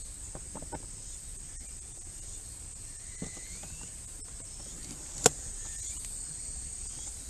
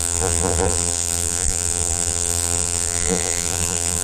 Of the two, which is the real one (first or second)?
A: first